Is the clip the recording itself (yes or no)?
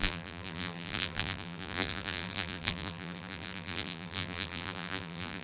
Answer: no